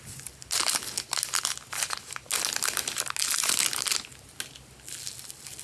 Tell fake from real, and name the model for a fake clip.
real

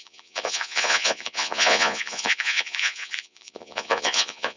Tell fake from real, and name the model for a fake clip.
fake, vocoder, Vocos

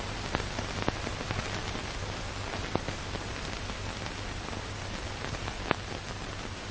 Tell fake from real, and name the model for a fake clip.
real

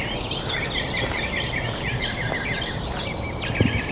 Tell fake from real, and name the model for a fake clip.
real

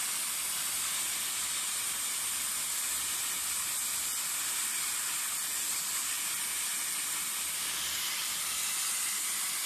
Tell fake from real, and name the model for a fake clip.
real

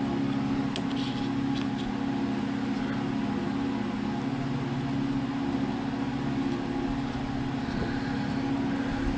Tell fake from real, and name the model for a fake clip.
real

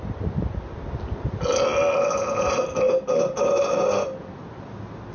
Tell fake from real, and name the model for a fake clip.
real